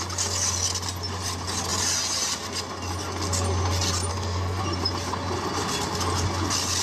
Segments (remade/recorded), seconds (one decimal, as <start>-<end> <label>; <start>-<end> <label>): 0.0-4.1 recorded; 4.1-4.6 remade; 4.6-6.8 recorded